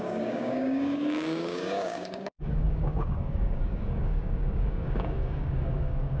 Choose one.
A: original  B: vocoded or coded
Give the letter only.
B